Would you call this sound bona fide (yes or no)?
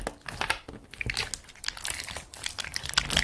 yes